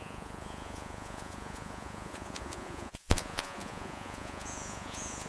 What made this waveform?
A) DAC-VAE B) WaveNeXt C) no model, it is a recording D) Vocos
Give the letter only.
D